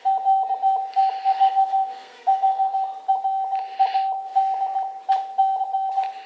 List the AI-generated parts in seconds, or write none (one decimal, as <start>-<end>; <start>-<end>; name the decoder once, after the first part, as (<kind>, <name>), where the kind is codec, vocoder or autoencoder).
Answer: 1.2-2.7 (codec, SNAC)